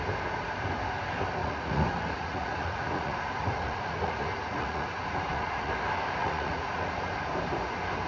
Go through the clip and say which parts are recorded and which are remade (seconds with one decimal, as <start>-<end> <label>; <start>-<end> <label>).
0.0-1.4 recorded; 1.4-5.7 remade; 5.7-6.2 recorded; 6.2-7.1 remade; 7.1-8.1 recorded